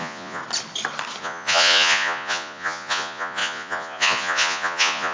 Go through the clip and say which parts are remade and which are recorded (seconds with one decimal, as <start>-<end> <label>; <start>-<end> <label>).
0.0-0.4 remade; 0.4-1.2 recorded; 1.2-5.1 remade